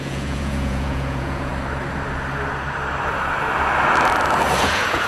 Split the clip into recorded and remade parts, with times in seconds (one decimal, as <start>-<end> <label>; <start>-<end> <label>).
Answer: 0.0-1.5 remade; 1.5-4.6 recorded; 4.6-5.1 remade